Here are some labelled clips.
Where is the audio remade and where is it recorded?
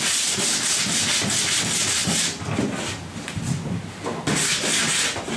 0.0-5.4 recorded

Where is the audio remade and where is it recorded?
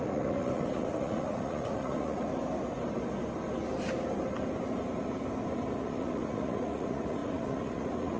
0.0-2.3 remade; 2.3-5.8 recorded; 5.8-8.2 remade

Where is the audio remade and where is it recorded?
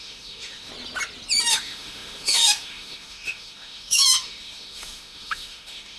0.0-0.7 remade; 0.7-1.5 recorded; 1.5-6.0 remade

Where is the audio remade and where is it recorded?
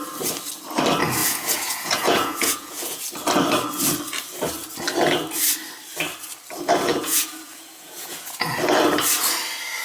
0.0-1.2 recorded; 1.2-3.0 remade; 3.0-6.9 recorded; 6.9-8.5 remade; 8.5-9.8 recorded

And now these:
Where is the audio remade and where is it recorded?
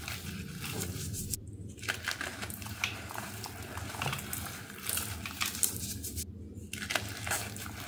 0.0-2.3 recorded; 2.3-3.3 remade; 3.3-7.9 recorded